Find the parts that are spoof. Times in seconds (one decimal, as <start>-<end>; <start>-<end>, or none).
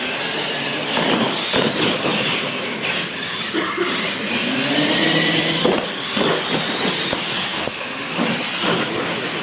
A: 7.5-8.2